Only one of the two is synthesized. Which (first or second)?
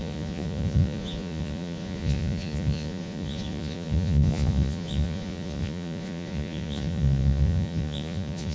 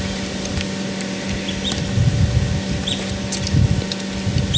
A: first